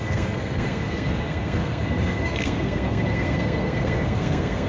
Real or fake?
fake